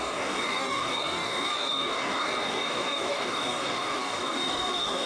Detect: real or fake fake